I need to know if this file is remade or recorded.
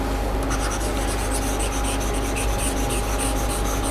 recorded